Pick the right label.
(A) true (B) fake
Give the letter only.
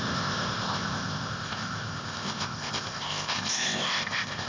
B